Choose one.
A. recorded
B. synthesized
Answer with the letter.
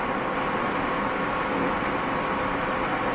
A